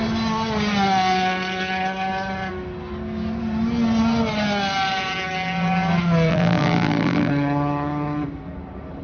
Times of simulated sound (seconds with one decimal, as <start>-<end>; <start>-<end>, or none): 6.3-7.3